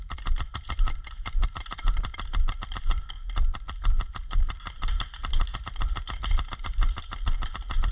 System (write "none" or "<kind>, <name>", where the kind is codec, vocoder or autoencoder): none